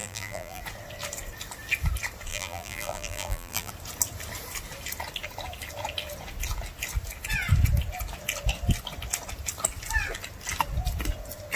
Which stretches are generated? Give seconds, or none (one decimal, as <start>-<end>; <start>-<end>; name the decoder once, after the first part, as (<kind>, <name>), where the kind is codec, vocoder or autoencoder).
0.0-0.6 (vocoder, BigVGAN v2); 2.3-3.7